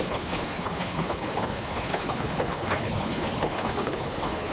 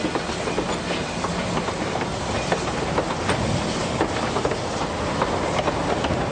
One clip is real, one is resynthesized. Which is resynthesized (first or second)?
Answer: first